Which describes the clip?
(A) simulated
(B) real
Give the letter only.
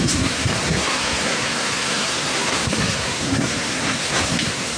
A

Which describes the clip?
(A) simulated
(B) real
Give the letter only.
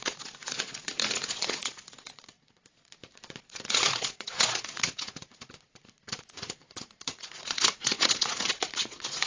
A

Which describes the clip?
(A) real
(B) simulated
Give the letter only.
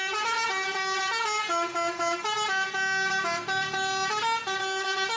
A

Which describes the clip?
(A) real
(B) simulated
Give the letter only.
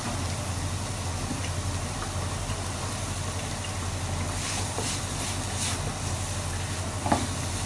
A